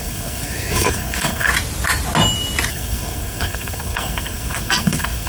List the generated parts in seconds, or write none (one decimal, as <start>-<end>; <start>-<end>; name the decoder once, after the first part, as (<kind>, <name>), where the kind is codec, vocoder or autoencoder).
0.0-1.5 (codec, SNAC); 2.7-5.3